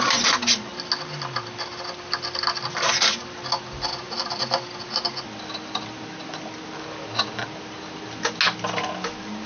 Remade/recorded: recorded